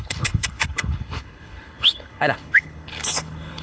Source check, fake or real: fake